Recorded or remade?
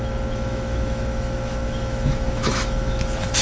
remade